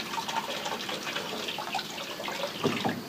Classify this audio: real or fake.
real